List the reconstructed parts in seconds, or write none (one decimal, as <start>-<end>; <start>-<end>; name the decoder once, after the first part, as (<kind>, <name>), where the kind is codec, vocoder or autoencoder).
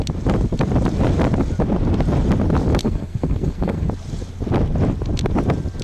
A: 2.8-3.9 (codec, SNAC)